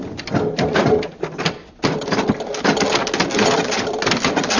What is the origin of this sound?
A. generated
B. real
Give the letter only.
B